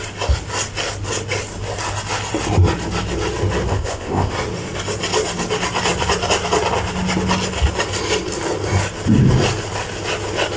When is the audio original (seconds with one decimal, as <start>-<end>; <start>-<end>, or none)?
0.0-3.7; 4.3-10.6